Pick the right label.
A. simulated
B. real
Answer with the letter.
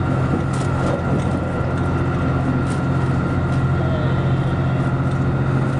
B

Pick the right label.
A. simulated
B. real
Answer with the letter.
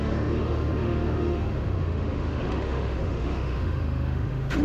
A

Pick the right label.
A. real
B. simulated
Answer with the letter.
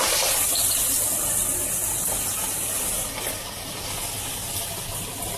A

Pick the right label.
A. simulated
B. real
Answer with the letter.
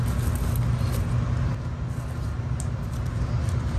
B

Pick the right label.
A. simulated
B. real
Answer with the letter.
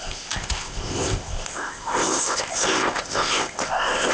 A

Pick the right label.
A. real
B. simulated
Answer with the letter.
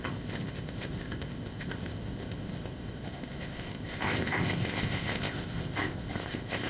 B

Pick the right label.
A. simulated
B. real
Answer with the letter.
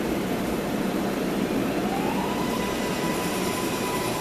A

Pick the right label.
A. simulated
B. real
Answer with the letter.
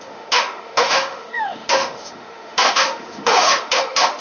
A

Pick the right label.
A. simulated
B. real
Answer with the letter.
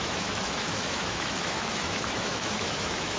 A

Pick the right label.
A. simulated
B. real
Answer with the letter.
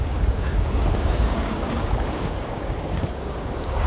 A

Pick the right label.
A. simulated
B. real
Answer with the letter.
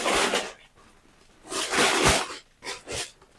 B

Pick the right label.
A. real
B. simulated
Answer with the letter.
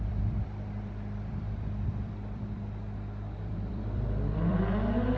B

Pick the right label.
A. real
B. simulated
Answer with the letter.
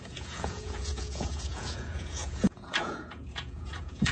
B